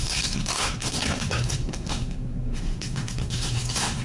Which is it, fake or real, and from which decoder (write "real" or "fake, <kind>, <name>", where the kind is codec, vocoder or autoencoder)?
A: fake, codec, SNAC